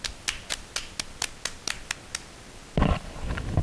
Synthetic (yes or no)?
no